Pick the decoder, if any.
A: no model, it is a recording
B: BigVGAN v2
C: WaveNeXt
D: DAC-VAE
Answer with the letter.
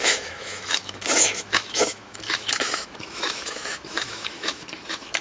D